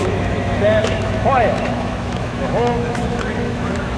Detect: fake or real fake